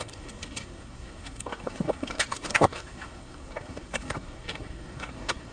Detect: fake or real fake